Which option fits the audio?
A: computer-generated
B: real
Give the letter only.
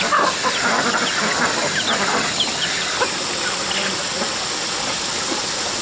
B